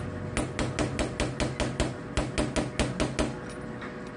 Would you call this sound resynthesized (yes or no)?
no